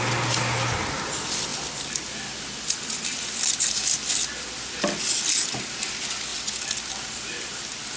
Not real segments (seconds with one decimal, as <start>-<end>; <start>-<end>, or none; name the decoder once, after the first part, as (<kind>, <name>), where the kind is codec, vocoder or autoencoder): none